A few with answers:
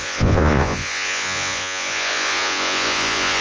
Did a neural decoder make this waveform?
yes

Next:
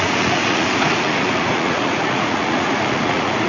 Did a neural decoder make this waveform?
yes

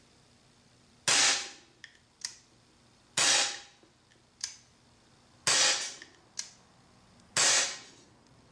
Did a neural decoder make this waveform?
no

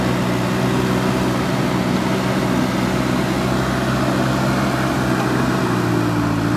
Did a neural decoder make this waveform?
no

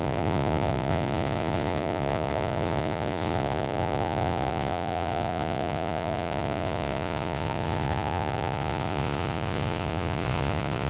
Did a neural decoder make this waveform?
yes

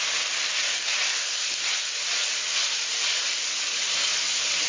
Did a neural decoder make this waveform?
no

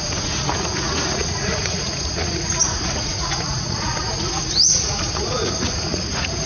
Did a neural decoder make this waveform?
yes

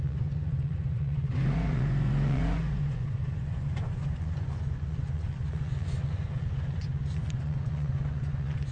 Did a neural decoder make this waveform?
yes